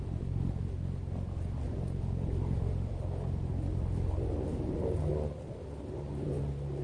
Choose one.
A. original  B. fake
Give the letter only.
A